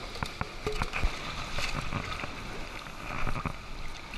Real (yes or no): yes